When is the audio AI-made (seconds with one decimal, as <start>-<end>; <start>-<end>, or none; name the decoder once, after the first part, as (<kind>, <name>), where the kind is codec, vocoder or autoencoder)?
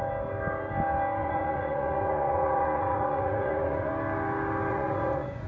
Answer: 1.2-3.9 (vocoder, Vocos); 4.7-5.5